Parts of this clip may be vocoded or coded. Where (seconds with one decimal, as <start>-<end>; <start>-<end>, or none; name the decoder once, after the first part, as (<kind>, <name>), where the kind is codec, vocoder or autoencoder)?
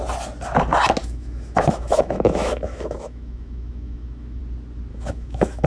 1.0-4.4 (autoencoder, DAC-VAE); 4.9-5.7